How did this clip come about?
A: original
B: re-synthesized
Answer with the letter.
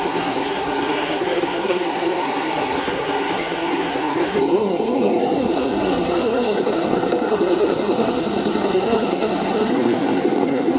B